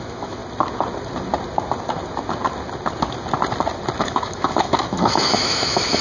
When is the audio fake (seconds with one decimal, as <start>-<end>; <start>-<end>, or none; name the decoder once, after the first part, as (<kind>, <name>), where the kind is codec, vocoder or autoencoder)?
0.0-0.4 (autoencoder, DAC-VAE); 4.0-6.0